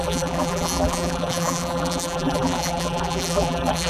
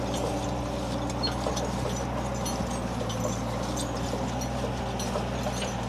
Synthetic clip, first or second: first